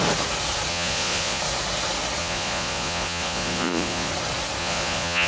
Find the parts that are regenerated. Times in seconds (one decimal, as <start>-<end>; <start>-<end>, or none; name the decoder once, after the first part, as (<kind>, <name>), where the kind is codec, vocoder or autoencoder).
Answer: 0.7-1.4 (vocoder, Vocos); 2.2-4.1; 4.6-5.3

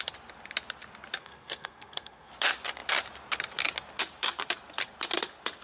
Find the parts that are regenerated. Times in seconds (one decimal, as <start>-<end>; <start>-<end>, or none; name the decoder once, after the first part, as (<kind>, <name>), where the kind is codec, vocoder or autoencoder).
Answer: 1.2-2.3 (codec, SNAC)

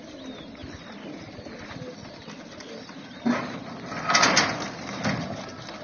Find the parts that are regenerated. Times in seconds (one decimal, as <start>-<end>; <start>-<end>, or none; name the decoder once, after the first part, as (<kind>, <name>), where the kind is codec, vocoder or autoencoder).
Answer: none

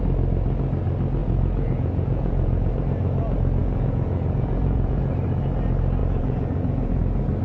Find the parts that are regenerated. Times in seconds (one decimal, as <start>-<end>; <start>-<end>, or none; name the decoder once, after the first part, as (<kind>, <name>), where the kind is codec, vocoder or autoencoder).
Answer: 1.2-2.7 (vocoder, Vocos); 3.6-5.0; 6.0-7.0

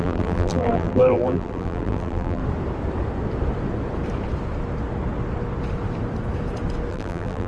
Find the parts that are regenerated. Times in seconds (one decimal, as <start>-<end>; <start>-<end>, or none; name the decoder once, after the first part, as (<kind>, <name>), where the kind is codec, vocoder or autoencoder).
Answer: 0.0-2.4 (vocoder, BigVGAN v2); 6.9-7.5

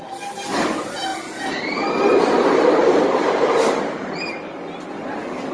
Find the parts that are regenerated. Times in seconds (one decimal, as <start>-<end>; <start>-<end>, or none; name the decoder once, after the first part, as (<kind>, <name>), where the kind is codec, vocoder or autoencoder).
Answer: 1.1-4.4 (vocoder, BigVGAN v2)